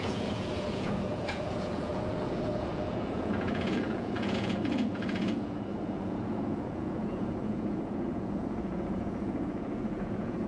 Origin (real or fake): fake